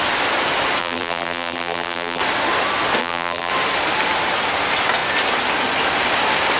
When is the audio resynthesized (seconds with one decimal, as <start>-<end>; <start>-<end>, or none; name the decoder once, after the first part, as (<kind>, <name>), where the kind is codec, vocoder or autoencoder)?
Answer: 0.8-2.2 (vocoder, BigVGAN v2); 3.0-3.5